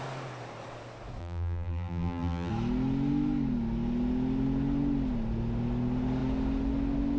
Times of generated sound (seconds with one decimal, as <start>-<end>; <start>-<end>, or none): 1.2-2.5